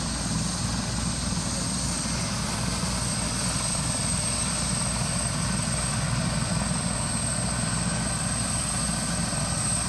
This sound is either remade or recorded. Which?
recorded